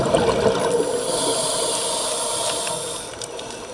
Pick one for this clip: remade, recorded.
recorded